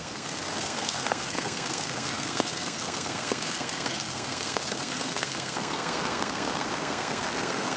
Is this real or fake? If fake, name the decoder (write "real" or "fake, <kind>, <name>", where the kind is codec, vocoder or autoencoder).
fake, codec, SNAC